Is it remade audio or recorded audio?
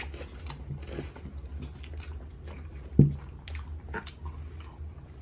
recorded